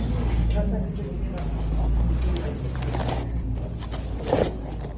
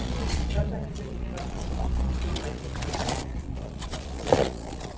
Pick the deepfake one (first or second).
second